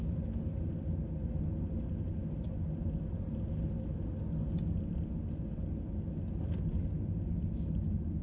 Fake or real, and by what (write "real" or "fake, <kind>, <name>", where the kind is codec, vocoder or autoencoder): real